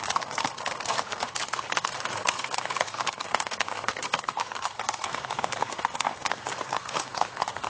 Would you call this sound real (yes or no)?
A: no